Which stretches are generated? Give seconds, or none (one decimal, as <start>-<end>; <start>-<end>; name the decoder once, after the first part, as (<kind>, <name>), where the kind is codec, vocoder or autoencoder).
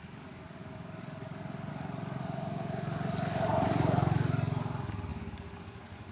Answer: 0.0-6.1 (codec, DAC)